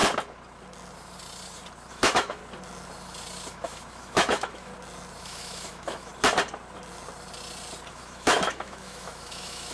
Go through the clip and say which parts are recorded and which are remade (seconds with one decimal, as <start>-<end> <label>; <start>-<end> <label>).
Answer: 0.0-1.9 recorded; 1.9-2.4 remade; 2.4-3.5 recorded; 3.5-4.7 remade; 4.7-5.2 recorded; 5.2-6.1 remade; 6.1-7.9 recorded; 7.9-9.7 remade